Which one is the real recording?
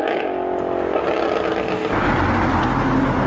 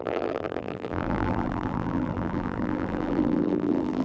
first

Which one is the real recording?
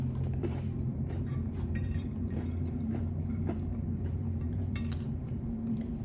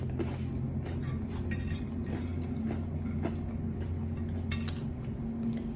second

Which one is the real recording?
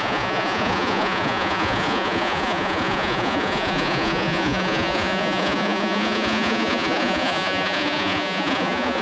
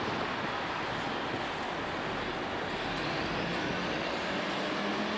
second